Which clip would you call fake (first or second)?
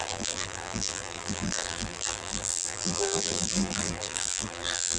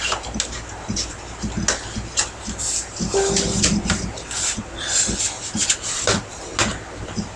first